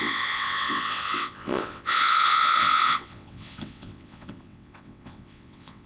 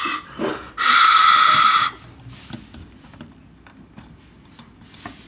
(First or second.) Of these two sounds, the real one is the second